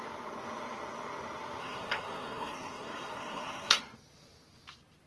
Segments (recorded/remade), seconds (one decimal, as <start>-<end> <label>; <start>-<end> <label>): 0.0-1.6 recorded; 1.6-3.8 remade; 3.8-5.1 recorded